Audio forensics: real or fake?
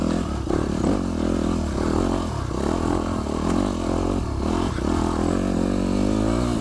real